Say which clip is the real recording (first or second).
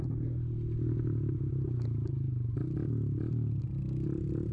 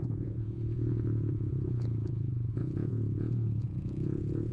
first